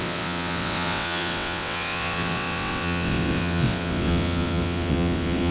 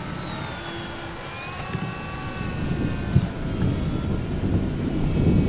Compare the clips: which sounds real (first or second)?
second